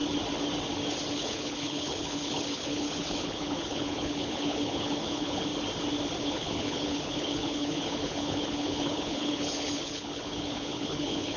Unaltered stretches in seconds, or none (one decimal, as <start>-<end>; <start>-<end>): 0.0-1.1; 5.5-6.2